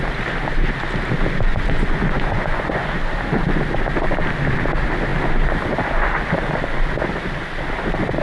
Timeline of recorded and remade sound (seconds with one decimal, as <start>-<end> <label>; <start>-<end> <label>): 0.0-1.5 recorded; 1.5-2.9 remade; 2.9-8.2 recorded